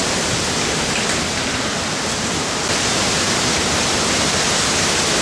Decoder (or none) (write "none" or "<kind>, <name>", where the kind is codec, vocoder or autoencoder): vocoder, BigVGAN v2